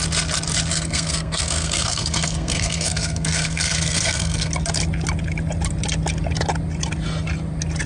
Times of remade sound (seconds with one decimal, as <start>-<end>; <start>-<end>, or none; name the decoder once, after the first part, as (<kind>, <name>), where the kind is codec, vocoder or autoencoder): 0.7-4.5 (codec, SNAC)